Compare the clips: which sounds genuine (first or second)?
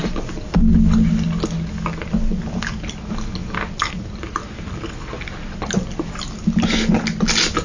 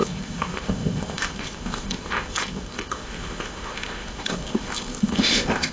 first